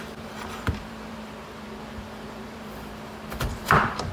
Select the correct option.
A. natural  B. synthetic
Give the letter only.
B